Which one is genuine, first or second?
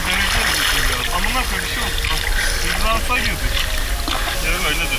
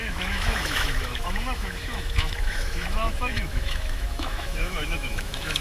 first